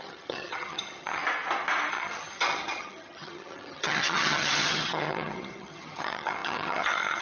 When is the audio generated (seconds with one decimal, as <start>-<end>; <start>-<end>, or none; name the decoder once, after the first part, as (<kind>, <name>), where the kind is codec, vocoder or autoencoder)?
0.0-1.2 (vocoder, HiFi-GAN); 1.9-7.2